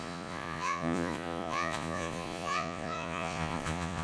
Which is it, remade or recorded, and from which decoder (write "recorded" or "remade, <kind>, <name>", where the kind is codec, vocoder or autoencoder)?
remade, vocoder, Vocos